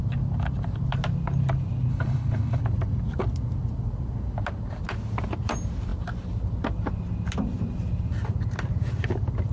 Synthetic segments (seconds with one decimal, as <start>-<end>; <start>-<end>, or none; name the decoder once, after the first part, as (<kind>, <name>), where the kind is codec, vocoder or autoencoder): 1.9-2.6 (codec, HILCodec)